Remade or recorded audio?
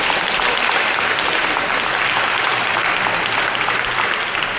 recorded